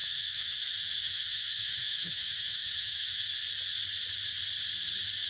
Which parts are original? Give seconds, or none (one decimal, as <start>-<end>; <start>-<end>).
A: 3.2-5.3

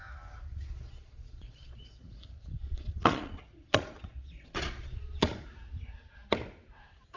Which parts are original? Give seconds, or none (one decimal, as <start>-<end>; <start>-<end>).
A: 0.0-0.5; 2.2-2.6; 5.3-7.2

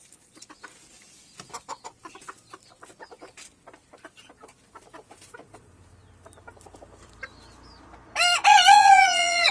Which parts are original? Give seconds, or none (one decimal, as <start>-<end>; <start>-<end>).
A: 0.0-8.5

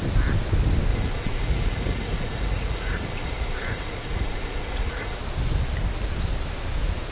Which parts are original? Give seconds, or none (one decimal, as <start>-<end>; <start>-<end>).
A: 0.0-0.9; 5.2-7.1

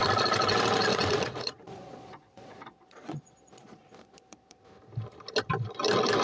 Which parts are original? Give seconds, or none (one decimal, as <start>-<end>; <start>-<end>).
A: 0.0-0.9; 4.6-6.2

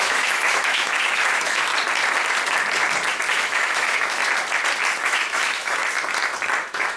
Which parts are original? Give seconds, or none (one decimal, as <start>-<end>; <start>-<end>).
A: 1.7-3.3; 4.2-5.0; 5.8-6.6